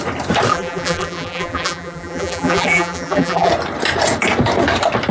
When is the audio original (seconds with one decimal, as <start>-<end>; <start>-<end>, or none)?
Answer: 0.0-0.5; 3.5-5.1